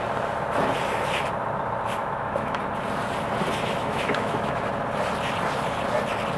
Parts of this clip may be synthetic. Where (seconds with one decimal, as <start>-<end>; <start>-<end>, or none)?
2.0-2.6; 3.8-4.7